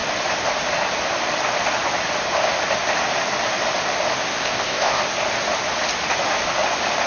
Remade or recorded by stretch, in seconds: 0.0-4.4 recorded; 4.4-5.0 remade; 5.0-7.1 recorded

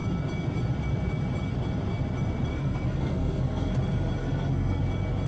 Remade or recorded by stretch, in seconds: 0.0-2.5 recorded; 2.5-3.7 remade; 3.7-4.2 recorded; 4.2-4.8 remade; 4.8-5.3 recorded